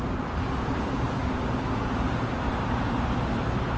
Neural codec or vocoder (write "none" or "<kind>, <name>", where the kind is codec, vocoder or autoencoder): vocoder, BigVGAN v2